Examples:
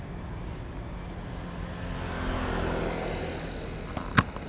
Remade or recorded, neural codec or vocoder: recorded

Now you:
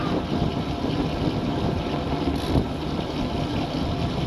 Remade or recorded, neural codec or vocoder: recorded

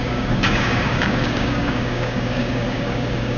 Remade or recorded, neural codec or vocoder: remade, codec, DAC